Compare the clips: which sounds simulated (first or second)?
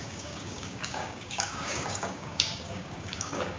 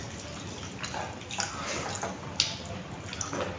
first